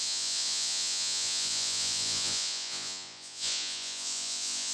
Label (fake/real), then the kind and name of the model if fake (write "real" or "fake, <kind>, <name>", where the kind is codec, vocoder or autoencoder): fake, vocoder, Vocos